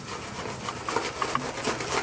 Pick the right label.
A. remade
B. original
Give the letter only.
B